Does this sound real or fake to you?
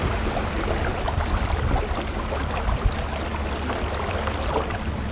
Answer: real